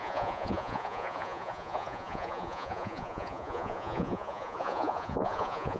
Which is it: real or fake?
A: fake